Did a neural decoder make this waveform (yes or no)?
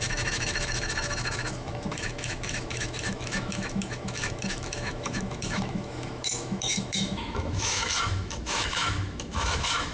yes